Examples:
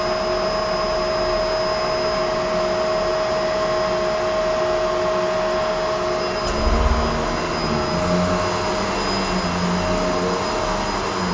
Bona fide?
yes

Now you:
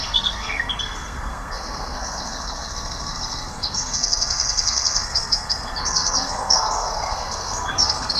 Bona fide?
no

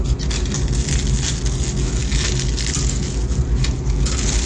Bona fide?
yes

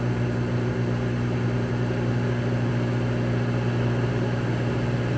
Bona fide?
yes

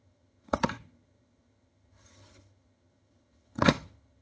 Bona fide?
no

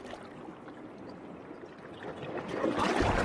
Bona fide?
yes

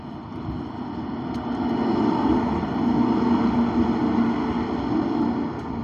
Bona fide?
yes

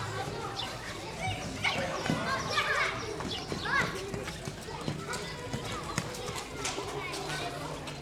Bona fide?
yes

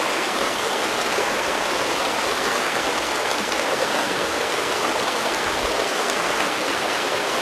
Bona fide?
no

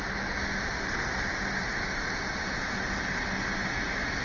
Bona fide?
yes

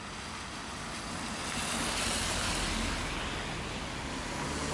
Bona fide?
yes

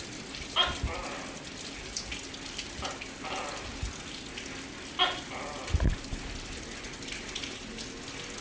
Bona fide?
yes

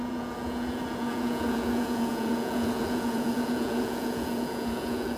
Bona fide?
no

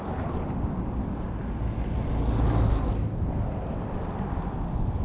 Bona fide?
yes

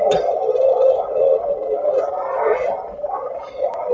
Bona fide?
no